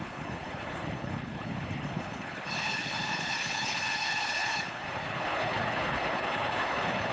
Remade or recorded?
remade